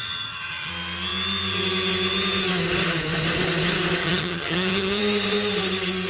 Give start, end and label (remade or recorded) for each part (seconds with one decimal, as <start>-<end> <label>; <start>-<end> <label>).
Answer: 0.0-0.7 remade; 0.7-4.0 recorded; 4.0-5.0 remade; 5.0-6.1 recorded